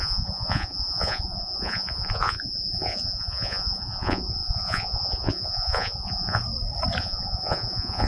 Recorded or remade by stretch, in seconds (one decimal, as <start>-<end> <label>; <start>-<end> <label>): 0.0-6.4 remade; 6.4-7.0 recorded; 7.0-8.1 remade